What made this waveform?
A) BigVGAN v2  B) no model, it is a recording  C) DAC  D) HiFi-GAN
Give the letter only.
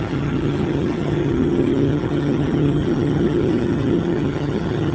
D